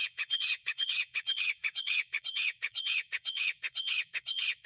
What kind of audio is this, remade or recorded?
remade